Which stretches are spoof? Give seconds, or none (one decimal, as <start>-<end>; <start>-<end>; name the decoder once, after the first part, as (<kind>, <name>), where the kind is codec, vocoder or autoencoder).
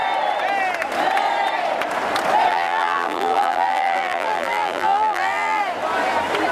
2.5-5.6 (vocoder, BigVGAN v2)